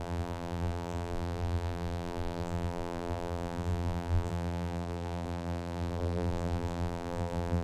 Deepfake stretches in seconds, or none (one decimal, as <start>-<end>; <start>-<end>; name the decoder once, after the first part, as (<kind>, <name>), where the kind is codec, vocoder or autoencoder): 0.0-7.6 (vocoder, BigVGAN v2)